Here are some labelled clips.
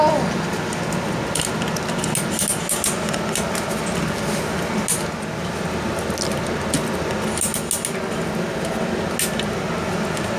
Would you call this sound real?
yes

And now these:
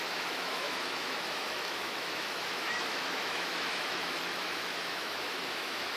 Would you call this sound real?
no